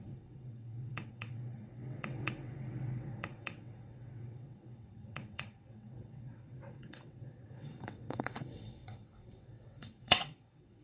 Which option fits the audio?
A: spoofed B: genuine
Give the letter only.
A